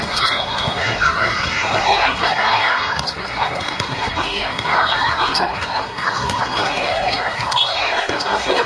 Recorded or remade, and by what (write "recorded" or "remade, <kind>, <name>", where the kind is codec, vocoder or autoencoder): remade, codec, SNAC